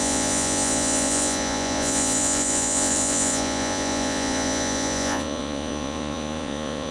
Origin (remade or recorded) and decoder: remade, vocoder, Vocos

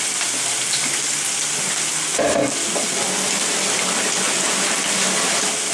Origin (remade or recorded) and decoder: recorded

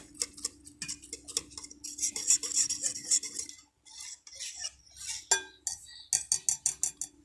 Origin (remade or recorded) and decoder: recorded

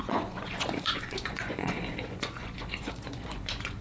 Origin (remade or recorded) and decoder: remade, vocoder, Vocos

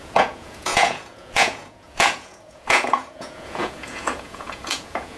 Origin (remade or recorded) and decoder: remade, vocoder, Vocos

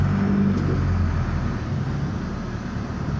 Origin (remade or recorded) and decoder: recorded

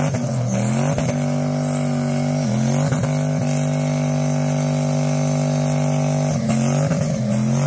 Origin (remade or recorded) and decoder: recorded